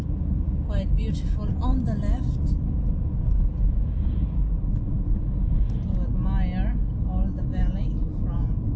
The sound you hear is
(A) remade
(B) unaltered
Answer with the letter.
B